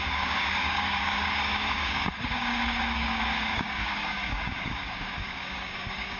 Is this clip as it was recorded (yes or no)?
no